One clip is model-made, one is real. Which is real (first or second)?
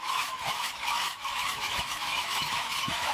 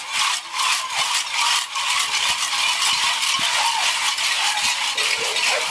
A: second